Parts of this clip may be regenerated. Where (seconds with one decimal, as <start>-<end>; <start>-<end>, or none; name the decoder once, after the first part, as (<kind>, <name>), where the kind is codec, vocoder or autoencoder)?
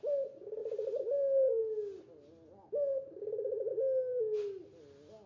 0.6-1.6 (vocoder, BigVGAN v2)